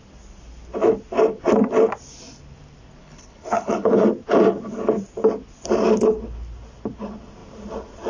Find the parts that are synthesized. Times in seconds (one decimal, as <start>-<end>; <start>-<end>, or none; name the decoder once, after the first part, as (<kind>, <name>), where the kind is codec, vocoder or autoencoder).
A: 3.0-4.0 (codec, HILCodec)